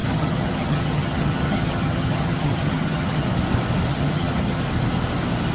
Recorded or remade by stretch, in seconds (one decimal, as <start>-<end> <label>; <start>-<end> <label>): 0.0-3.3 remade; 3.3-3.9 recorded; 3.9-4.6 remade; 4.6-5.5 recorded

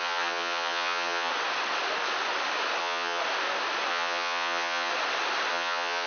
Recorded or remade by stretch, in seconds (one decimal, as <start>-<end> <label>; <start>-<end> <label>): 0.0-1.3 remade; 1.3-2.8 recorded; 2.8-3.2 remade; 3.2-3.9 recorded; 3.9-4.9 remade; 4.9-5.5 recorded; 5.5-6.1 remade

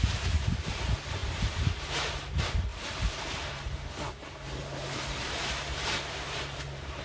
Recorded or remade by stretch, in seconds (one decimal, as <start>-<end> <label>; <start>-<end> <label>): 0.0-7.0 recorded

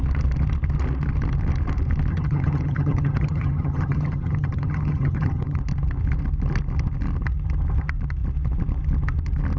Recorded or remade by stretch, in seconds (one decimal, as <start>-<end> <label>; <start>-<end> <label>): 0.0-2.1 recorded; 2.1-5.6 remade; 5.6-9.6 recorded

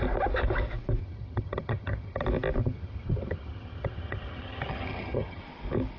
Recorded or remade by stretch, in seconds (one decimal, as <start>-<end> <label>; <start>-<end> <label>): 0.0-1.0 recorded; 1.0-2.2 remade; 2.2-2.6 recorded; 2.6-5.4 remade; 5.4-6.0 recorded

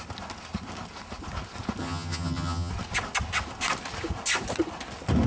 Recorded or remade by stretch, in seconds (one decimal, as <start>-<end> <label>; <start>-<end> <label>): 0.0-1.8 recorded; 1.8-2.7 remade; 2.7-5.3 recorded

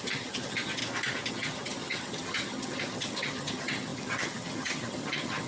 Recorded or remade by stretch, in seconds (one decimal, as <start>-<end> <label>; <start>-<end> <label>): 0.0-0.8 remade; 0.8-1.3 recorded; 1.3-5.5 remade